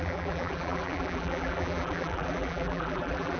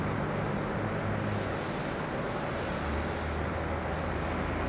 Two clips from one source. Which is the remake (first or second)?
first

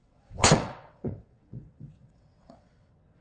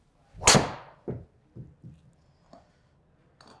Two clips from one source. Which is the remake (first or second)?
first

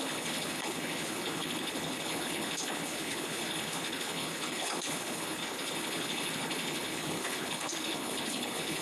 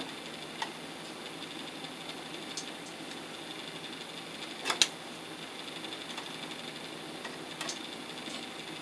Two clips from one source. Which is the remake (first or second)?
first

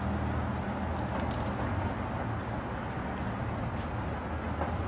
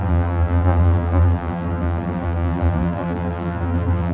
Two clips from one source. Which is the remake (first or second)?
second